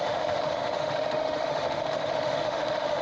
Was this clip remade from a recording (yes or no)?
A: yes